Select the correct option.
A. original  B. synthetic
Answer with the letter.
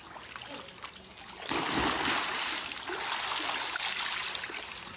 A